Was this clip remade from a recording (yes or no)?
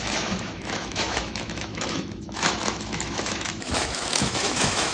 yes